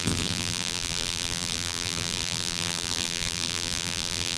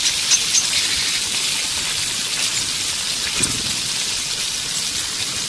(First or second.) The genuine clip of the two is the second